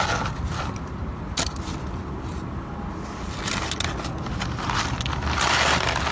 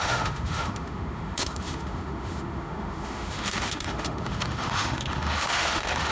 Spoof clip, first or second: second